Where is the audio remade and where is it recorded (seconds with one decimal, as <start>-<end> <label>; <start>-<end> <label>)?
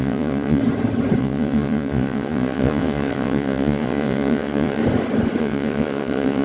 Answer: 0.0-0.6 remade; 0.6-1.2 recorded; 1.2-4.8 remade; 4.8-5.4 recorded; 5.4-6.4 remade